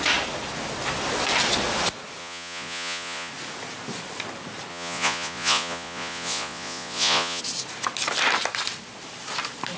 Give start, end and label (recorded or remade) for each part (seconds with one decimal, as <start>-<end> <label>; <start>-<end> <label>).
0.0-2.2 recorded; 2.2-3.3 remade; 3.3-4.7 recorded; 4.7-7.4 remade; 7.4-9.8 recorded